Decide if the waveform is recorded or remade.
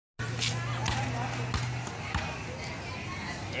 recorded